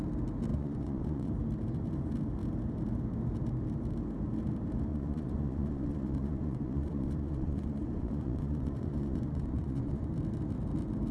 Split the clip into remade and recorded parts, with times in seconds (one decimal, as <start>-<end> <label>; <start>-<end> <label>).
0.0-0.5 recorded; 0.5-1.3 remade; 1.3-4.9 recorded; 4.9-10.1 remade; 10.1-11.1 recorded